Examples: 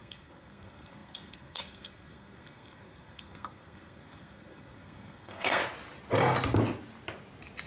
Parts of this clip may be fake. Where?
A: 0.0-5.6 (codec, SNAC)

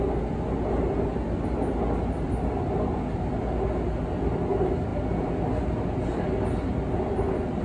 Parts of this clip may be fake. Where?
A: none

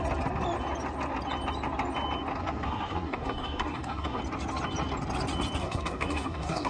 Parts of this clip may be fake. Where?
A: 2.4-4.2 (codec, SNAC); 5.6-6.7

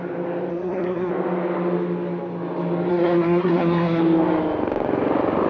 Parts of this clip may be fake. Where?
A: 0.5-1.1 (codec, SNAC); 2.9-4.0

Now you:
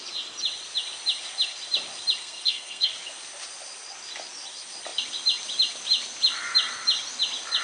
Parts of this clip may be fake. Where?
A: 2.2-2.9 (codec, SNAC)